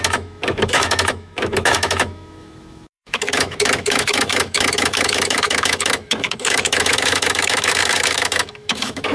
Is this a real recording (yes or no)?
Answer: no